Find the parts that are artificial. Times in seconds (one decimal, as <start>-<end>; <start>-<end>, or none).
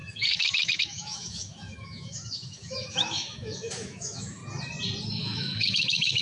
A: 0.0-4.4; 5.2-6.2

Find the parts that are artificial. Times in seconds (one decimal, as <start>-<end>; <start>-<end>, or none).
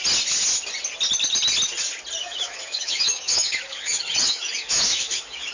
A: 2.2-5.5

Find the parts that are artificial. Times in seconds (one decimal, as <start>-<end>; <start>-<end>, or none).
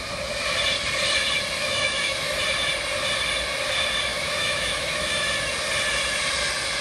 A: 1.6-2.4; 4.1-5.5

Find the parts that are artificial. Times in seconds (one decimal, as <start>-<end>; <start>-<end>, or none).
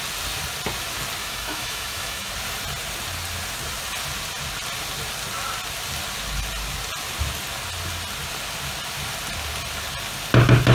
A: 1.2-2.3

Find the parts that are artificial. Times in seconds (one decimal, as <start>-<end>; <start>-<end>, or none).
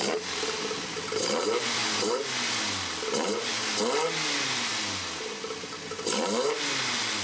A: none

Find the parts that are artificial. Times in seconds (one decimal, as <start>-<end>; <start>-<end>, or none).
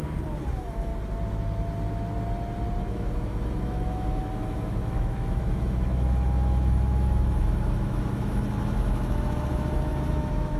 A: 0.5-0.9; 2.8-10.6